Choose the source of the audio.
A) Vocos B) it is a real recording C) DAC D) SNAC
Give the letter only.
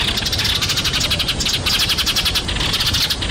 B